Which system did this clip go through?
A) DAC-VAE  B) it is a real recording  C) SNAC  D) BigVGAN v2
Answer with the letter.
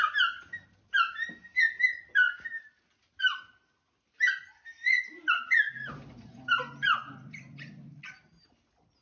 B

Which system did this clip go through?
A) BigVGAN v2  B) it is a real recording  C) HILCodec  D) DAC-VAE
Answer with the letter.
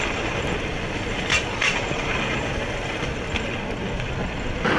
B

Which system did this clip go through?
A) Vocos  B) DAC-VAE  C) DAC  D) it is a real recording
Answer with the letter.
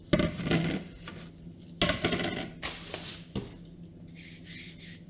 D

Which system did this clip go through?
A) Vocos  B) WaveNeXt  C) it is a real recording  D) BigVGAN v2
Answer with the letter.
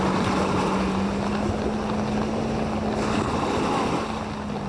C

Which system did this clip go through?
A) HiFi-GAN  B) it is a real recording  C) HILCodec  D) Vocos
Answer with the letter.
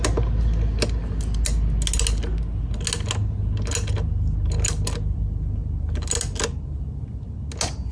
B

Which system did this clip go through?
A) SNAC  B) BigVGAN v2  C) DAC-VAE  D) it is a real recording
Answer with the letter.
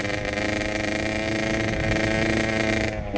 D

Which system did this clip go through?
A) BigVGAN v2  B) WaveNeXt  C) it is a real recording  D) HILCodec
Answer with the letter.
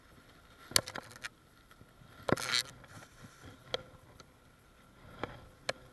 C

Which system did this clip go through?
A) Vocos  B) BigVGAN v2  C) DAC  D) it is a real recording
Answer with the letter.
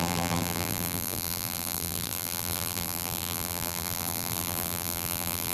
B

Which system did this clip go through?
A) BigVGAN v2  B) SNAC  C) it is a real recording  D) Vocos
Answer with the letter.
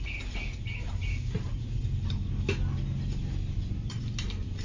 C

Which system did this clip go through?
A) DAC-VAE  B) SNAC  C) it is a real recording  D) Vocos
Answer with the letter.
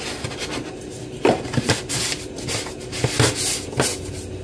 C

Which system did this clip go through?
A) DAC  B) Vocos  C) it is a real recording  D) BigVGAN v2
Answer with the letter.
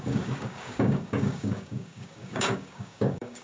A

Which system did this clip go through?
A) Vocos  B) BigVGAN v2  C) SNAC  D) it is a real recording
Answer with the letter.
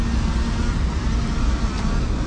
D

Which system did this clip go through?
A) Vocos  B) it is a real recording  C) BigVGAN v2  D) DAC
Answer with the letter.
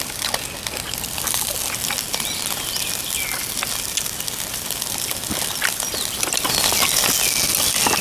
B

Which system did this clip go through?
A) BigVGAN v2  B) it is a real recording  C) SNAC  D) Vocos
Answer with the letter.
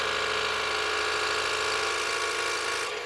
B